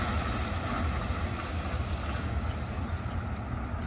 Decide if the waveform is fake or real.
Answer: real